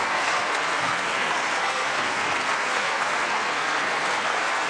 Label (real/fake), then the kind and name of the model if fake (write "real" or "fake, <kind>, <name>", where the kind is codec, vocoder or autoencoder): fake, codec, SNAC